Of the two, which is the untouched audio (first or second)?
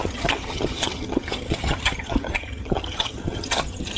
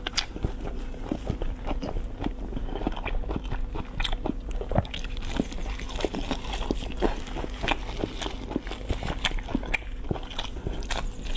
second